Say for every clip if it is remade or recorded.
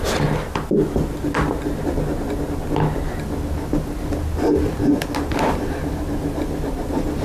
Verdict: recorded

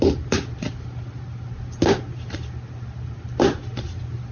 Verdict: recorded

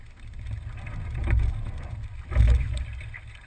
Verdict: recorded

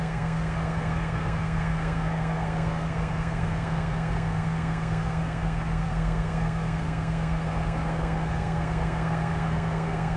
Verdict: remade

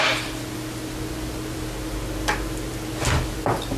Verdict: recorded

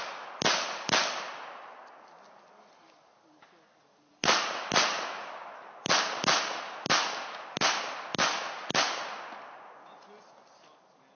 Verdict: recorded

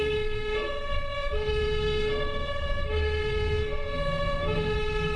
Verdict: remade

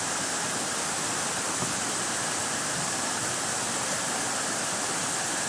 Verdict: recorded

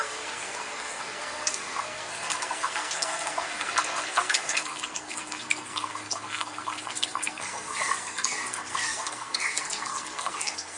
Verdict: remade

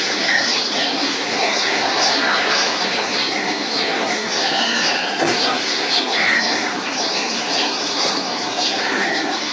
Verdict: remade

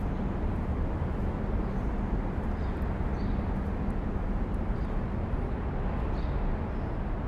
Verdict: recorded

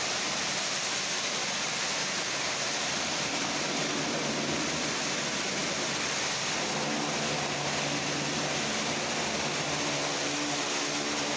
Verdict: recorded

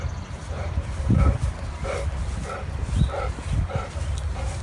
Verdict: recorded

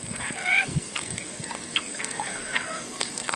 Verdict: remade